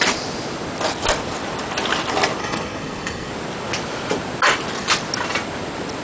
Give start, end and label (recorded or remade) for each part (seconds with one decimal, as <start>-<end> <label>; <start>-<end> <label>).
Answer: 0.0-2.4 recorded; 2.4-3.3 remade; 3.3-6.0 recorded